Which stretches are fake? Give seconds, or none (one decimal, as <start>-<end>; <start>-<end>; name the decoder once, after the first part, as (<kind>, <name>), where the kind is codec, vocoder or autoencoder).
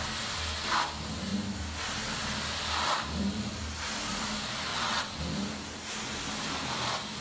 4.7-5.2 (vocoder, WaveNeXt)